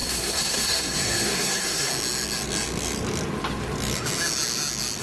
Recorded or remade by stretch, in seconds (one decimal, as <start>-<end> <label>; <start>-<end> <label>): 0.0-1.9 remade; 1.9-5.0 recorded